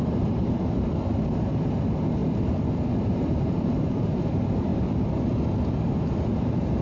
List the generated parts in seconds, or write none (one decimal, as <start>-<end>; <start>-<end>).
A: 0.0-2.2; 3.0-4.7; 5.8-6.8